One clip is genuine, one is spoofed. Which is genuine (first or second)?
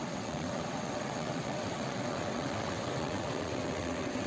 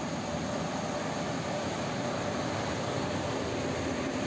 second